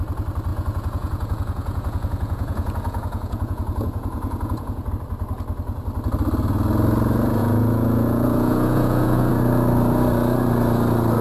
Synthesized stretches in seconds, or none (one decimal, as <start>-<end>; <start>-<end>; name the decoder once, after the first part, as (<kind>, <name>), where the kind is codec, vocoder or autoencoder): 0.5-4.9 (vocoder, Vocos); 7.4-9.3